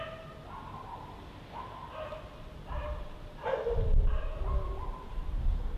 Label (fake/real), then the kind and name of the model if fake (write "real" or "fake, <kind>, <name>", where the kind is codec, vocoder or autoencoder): real